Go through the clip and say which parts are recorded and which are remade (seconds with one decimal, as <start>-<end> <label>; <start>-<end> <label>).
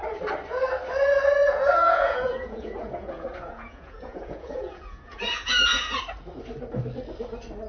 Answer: 0.0-1.4 recorded; 1.4-6.0 remade; 6.0-7.7 recorded